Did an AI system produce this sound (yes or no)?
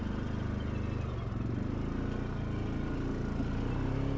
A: no